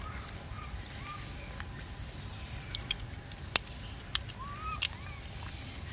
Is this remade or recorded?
recorded